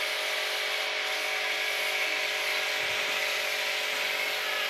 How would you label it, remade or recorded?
recorded